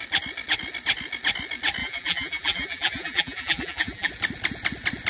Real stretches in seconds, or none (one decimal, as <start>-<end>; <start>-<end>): 0.0-1.8; 4.1-5.1